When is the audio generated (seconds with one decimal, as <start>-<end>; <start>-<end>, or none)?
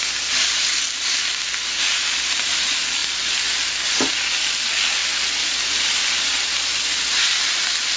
none